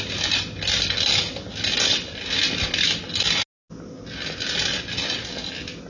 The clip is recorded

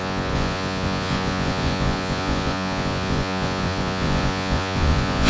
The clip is remade